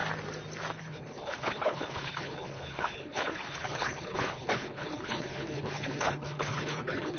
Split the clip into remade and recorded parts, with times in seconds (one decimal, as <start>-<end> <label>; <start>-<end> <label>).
0.0-0.8 recorded; 0.8-7.2 remade